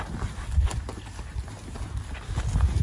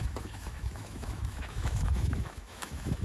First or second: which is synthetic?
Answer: second